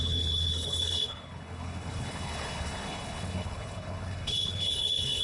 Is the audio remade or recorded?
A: remade